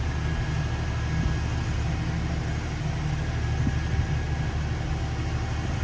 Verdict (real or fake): real